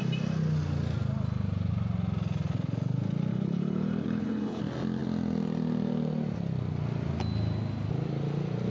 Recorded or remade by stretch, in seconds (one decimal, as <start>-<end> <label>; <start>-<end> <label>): 0.0-3.3 recorded; 3.3-4.6 remade; 4.6-8.7 recorded